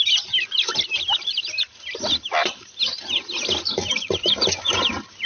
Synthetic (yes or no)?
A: no